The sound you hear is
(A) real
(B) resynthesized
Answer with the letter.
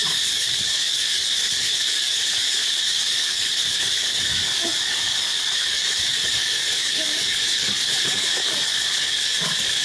B